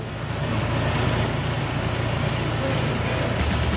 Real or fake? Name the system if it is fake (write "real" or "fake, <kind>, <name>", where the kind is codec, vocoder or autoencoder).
real